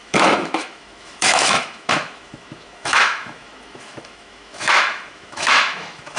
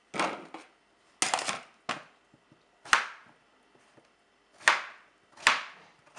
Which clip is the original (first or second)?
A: second